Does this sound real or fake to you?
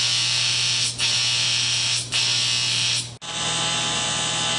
real